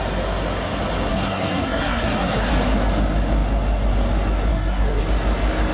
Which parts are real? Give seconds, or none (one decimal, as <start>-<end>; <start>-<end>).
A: 0.0-1.1; 2.5-4.5; 5.0-5.7